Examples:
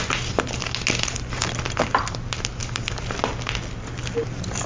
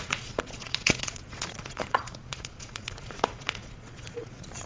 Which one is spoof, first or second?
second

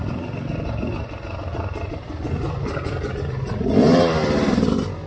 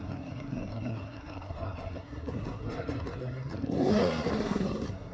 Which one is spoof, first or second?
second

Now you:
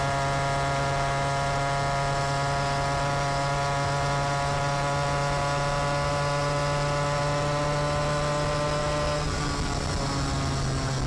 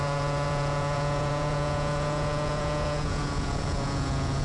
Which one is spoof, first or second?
second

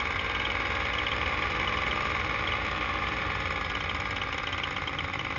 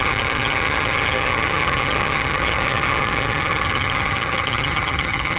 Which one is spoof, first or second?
second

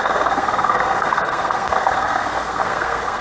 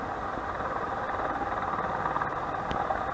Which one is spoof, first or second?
first